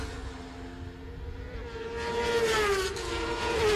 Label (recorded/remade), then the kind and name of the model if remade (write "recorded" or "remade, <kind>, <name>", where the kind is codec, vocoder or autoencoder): recorded